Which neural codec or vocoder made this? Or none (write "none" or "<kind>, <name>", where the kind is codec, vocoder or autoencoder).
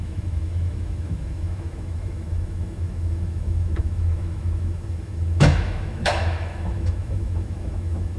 autoencoder, DAC-VAE